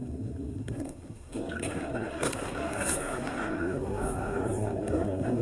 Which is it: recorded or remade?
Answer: remade